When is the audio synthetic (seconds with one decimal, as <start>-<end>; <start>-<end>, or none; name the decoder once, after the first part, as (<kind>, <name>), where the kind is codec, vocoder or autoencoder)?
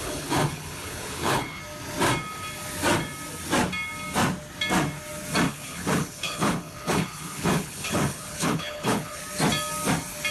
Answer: 0.0-1.6 (codec, HILCodec); 5.5-9.2